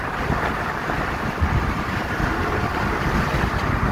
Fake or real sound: fake